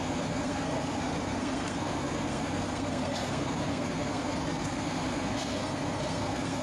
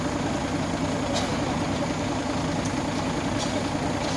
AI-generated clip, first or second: first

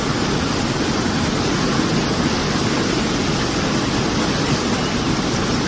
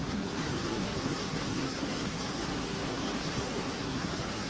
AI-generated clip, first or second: second